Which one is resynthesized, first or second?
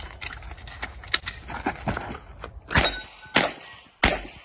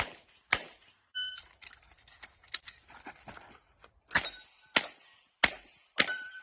second